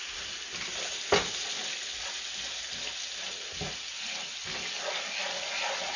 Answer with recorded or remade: recorded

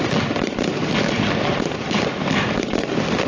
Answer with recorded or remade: recorded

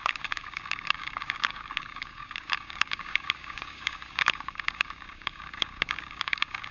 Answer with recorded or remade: remade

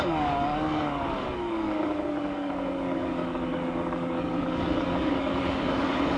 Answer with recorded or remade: remade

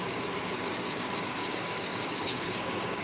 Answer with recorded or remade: remade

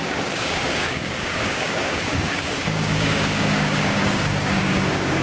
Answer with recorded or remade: remade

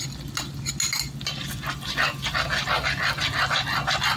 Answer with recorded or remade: recorded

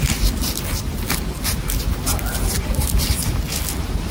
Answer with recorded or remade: recorded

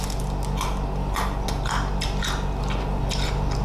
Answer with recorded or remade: recorded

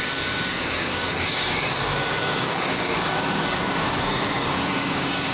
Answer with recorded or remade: remade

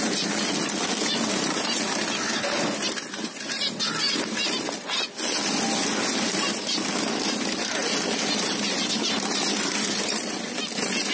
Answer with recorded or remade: recorded